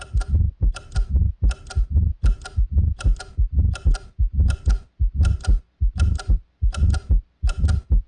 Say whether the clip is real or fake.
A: fake